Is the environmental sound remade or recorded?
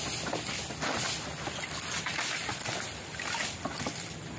recorded